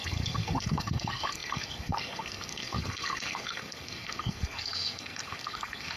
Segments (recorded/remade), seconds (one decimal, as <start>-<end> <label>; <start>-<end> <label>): 0.0-6.0 remade